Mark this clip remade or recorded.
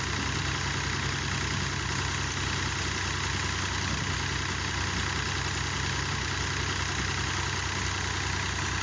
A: recorded